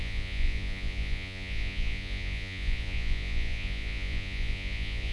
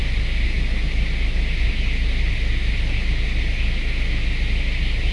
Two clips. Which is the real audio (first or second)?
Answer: second